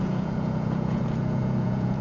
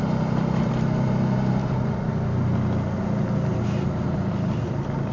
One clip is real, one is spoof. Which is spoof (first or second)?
first